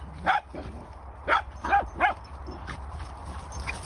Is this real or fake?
real